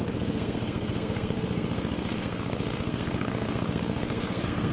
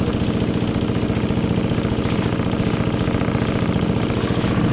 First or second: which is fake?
first